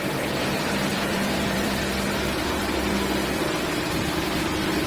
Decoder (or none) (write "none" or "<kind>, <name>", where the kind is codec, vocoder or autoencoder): vocoder, BigVGAN v2